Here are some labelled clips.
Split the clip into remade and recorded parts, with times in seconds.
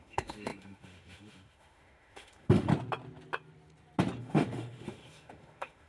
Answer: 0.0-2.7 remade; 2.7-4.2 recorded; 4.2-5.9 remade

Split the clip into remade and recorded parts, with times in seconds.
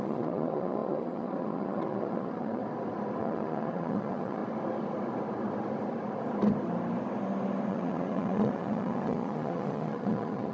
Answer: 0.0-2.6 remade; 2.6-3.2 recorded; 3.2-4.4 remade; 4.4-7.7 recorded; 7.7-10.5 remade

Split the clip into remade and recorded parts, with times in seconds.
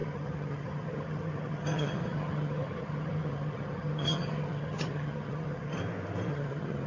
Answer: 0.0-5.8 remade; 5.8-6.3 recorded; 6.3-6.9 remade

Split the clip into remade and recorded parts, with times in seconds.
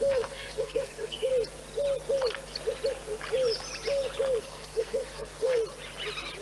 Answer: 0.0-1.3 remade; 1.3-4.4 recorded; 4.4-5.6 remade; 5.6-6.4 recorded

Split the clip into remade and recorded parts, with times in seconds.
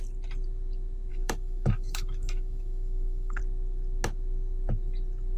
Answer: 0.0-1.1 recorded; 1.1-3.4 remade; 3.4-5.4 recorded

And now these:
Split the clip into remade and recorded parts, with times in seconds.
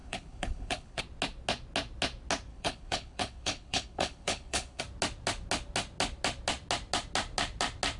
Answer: 0.0-1.0 remade; 1.0-2.5 recorded; 2.5-4.8 remade; 4.8-8.0 recorded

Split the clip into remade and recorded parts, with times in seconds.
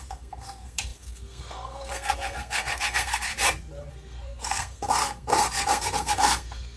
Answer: 0.0-3.3 remade; 3.3-3.9 recorded; 3.9-6.8 remade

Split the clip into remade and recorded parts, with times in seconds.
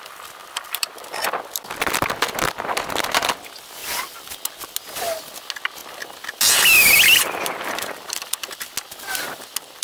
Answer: 0.0-0.4 recorded; 0.4-1.7 remade; 1.7-3.8 recorded; 3.8-4.3 remade; 4.3-5.8 recorded; 5.8-8.7 remade; 8.7-9.8 recorded